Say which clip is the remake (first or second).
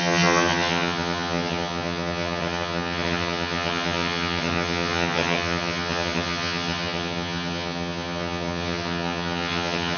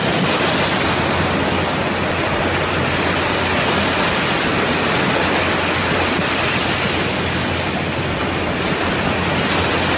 first